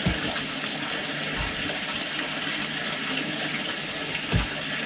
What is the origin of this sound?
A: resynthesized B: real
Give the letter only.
B